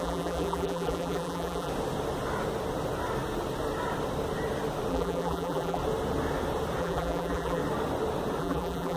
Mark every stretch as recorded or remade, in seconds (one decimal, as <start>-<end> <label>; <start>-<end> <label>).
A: 0.0-1.7 remade; 1.7-4.9 recorded; 4.9-5.8 remade; 5.8-6.8 recorded; 6.8-7.6 remade; 7.6-8.4 recorded; 8.4-9.0 remade